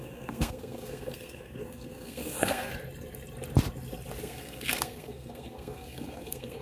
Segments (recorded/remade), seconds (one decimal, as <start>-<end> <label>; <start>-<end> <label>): 0.0-2.7 remade; 2.7-4.2 recorded; 4.2-6.6 remade